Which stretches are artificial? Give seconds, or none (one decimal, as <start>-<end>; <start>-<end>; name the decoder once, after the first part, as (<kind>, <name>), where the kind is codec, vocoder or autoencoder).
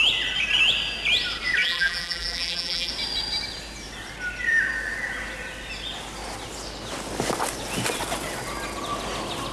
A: 1.6-2.9 (vocoder, BigVGAN v2)